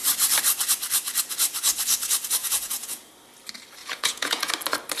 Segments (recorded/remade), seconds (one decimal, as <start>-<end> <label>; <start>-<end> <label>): 0.0-2.4 recorded; 2.4-3.1 remade; 3.1-3.8 recorded; 3.8-4.5 remade; 4.5-5.0 recorded